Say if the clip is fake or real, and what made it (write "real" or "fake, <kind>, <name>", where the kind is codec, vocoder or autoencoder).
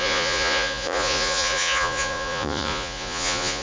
fake, vocoder, Vocos